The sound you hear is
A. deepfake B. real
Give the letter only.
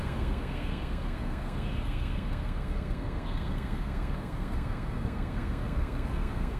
A